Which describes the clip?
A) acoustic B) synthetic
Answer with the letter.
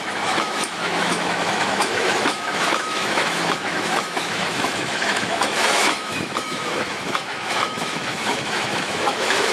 B